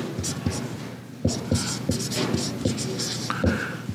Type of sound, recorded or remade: remade